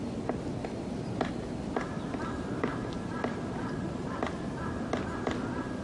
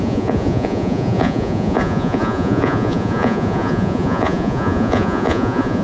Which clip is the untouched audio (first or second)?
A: first